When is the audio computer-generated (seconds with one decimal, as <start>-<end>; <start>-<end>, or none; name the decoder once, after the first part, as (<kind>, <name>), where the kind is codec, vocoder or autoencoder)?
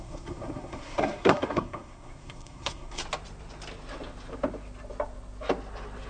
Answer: 0.0-3.0 (codec, SNAC)